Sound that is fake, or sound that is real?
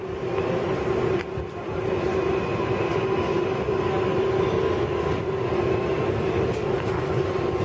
real